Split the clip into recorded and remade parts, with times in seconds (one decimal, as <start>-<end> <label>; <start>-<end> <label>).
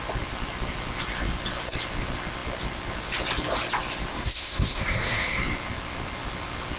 0.0-4.1 recorded; 4.1-5.4 remade; 5.4-6.8 recorded